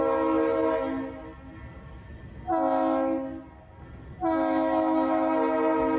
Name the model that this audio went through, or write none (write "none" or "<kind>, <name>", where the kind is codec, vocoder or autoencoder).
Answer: none